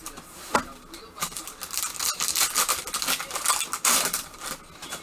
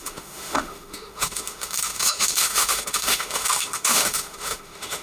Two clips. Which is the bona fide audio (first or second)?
first